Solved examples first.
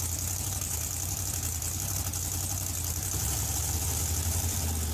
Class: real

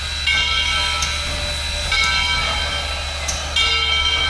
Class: real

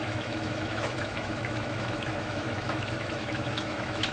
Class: fake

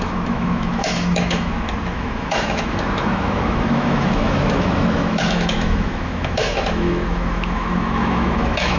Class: fake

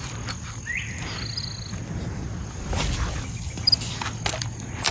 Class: real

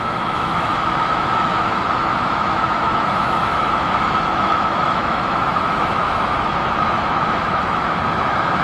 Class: fake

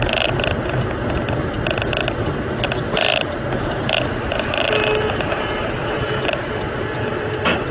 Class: real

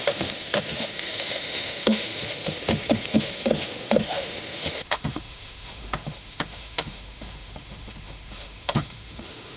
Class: fake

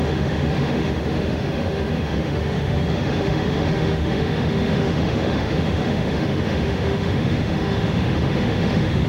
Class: fake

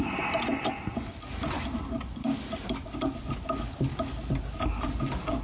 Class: real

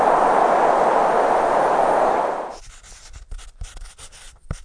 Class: real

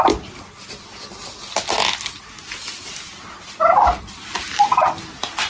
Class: real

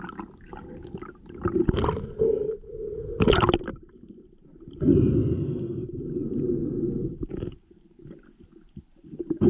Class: real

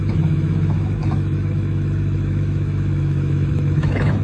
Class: fake